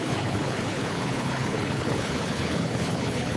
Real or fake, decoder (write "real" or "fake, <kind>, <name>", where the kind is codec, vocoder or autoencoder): fake, codec, HILCodec